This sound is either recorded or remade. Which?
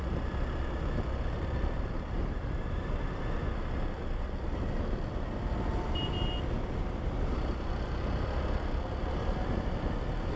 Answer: recorded